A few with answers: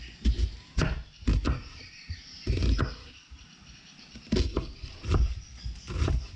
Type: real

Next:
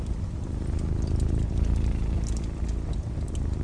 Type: real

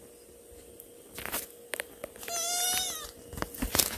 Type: real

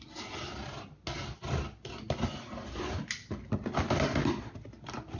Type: real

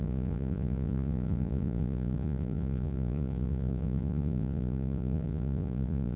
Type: fake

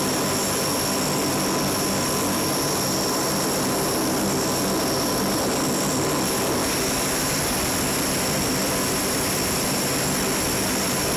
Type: real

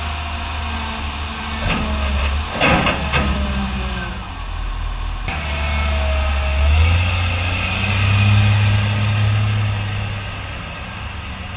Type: real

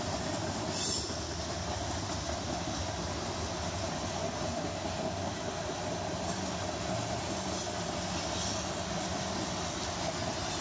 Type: real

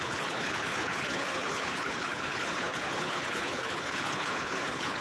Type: fake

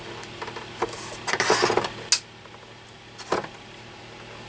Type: real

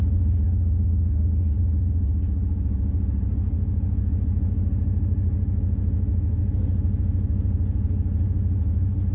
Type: fake